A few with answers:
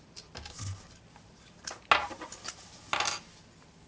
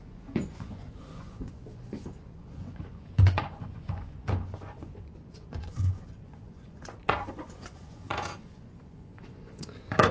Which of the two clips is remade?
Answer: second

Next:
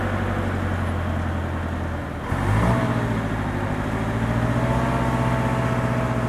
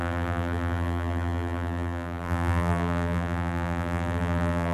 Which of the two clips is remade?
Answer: second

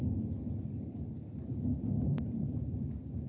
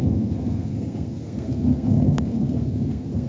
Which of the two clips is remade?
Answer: second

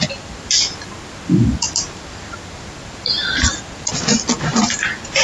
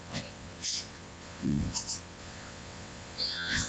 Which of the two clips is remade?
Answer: second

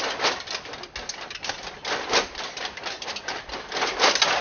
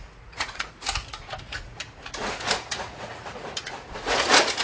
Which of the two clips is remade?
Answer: second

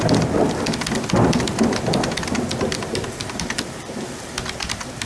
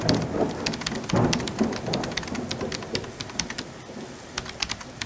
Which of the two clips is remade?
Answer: first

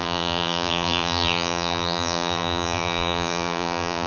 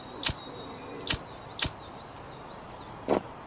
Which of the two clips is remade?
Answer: first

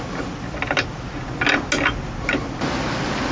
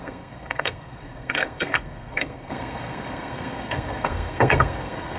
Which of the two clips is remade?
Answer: second